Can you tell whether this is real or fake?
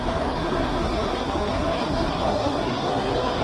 fake